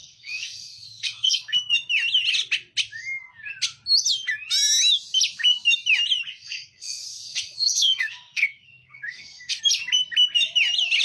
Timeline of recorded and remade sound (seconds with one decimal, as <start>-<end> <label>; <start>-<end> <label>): 0.0-1.7 remade; 1.7-6.4 recorded; 6.4-9.6 remade; 9.6-11.0 recorded